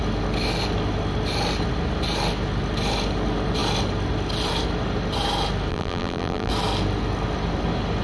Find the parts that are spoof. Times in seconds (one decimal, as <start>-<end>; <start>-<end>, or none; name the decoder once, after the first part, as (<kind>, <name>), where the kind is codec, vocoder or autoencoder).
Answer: 5.7-6.5 (vocoder, BigVGAN v2)